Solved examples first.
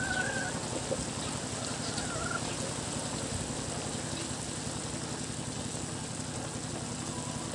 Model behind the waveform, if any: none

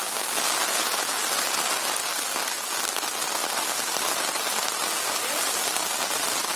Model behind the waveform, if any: none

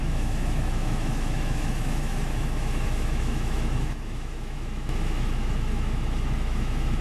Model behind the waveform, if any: autoencoder, DAC-VAE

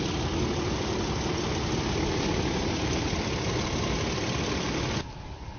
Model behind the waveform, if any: none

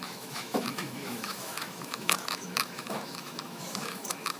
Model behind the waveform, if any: autoencoder, DAC-VAE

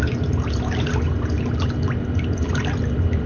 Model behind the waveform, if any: none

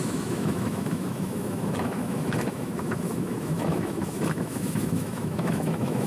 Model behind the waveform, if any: autoencoder, DAC-VAE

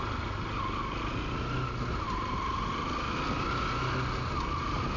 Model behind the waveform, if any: none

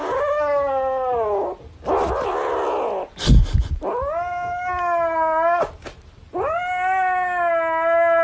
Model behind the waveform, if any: none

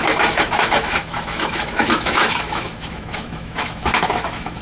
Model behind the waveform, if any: autoencoder, DAC-VAE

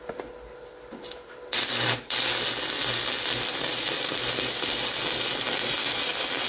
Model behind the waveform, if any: none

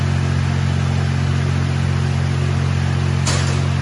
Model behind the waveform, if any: none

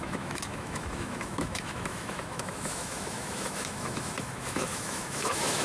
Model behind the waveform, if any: autoencoder, DAC-VAE